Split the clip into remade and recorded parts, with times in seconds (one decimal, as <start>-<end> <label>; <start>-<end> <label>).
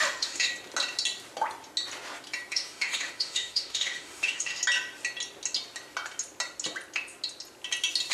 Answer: 0.0-0.5 remade; 0.5-2.5 recorded; 2.5-4.6 remade; 4.6-8.1 recorded